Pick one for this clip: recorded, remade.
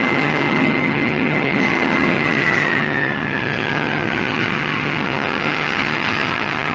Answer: remade